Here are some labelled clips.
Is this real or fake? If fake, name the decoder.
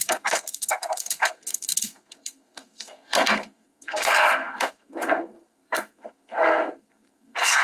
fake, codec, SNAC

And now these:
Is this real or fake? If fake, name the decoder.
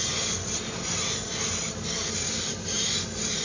real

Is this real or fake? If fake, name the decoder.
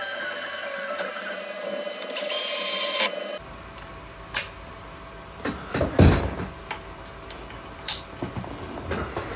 real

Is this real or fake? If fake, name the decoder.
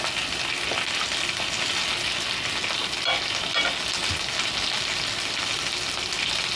real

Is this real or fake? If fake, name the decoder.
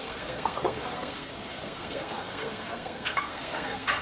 fake, codec, SNAC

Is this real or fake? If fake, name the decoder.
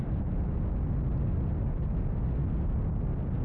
real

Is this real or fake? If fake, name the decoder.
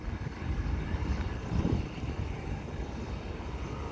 fake, codec, DAC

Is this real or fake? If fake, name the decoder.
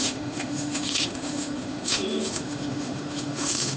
fake, autoencoder, DAC-VAE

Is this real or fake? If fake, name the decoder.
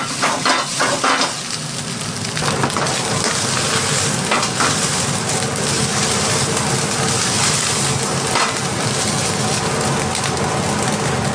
real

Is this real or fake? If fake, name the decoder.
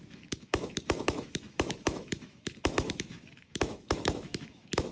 fake, autoencoder, DAC-VAE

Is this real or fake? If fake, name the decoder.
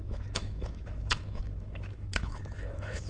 fake, autoencoder, DAC-VAE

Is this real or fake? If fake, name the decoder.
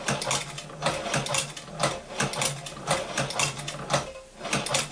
real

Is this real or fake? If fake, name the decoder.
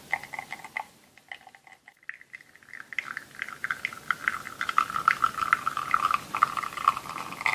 real